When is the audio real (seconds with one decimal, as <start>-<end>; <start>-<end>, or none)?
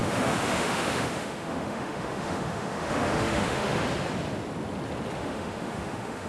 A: 3.8-5.2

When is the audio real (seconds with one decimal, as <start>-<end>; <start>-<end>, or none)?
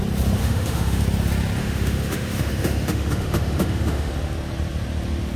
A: 0.0-0.4; 1.0-1.6; 4.1-5.4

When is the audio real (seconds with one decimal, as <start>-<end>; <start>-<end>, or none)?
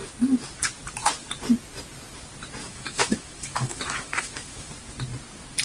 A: 0.0-2.6; 4.7-5.6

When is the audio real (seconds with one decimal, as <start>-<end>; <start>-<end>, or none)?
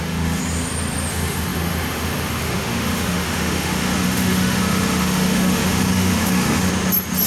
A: 0.4-1.1; 6.7-7.3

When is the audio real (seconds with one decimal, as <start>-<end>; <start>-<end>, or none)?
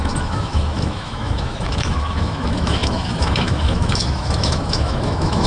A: none